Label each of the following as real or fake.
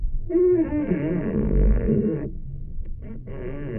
fake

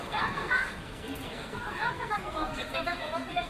fake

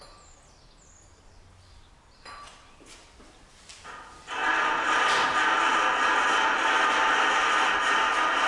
real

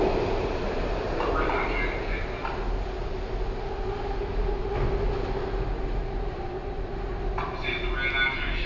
real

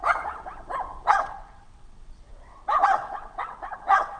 fake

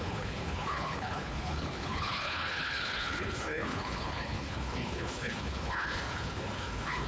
fake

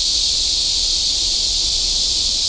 real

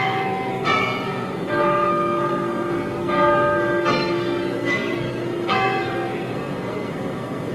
fake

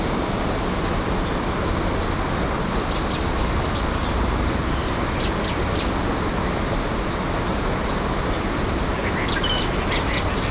real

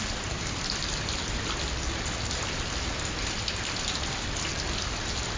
real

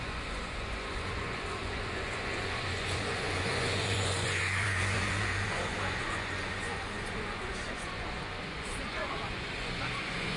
fake